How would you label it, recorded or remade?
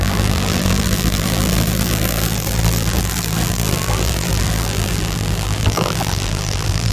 remade